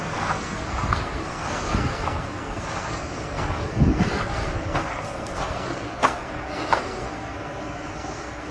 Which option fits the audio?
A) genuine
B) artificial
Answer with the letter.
B